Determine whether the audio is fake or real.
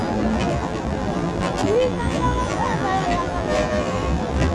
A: fake